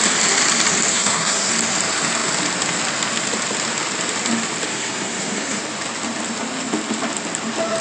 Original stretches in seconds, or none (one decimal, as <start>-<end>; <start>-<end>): 0.0-0.9; 1.5-4.7; 5.6-7.8